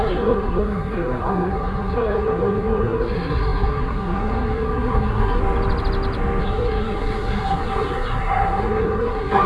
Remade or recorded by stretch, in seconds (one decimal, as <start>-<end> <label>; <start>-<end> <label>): 0.0-5.4 remade; 5.4-6.4 recorded; 6.4-9.5 remade